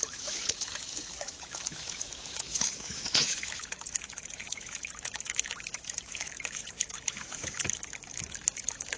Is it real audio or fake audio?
fake